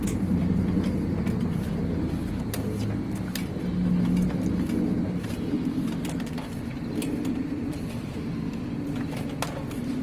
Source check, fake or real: real